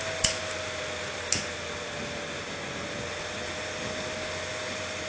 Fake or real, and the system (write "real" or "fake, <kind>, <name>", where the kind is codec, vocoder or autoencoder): real